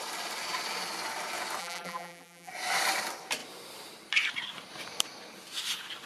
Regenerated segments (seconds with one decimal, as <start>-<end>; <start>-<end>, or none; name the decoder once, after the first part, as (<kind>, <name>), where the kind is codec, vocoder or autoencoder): 1.6-2.5 (vocoder, BigVGAN v2)